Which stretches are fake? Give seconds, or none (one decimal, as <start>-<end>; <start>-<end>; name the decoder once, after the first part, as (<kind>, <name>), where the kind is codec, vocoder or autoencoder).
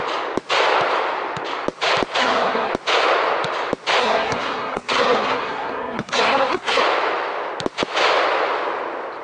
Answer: 2.2-2.7 (codec, SNAC); 4.0-6.8